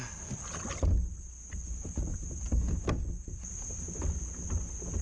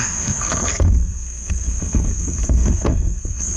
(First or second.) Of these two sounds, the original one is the first